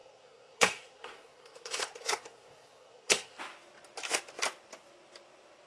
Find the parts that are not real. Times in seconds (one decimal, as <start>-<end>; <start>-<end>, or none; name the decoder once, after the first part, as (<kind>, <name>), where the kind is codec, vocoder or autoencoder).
0.0-3.4 (codec, SNAC)